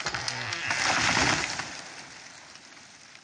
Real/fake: real